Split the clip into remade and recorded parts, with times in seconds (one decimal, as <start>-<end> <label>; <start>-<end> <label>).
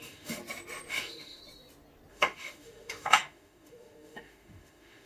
0.0-0.4 remade; 0.4-0.9 recorded; 0.9-1.4 remade; 1.4-2.1 recorded; 2.1-5.1 remade